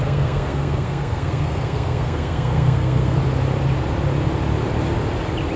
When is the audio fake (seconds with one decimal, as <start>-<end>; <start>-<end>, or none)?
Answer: 0.0-3.2